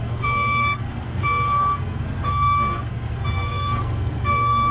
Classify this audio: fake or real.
fake